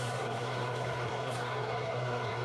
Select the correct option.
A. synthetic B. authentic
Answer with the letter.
A